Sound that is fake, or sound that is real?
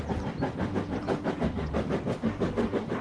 fake